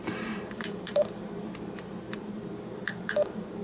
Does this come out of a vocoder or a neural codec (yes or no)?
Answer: yes